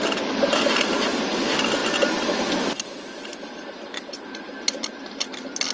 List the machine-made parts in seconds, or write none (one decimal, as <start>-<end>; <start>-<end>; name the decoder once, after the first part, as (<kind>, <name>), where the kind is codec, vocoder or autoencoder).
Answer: none